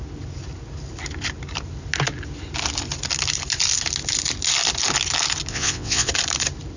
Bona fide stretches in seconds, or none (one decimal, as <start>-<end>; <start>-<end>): 0.0-5.5; 6.1-6.8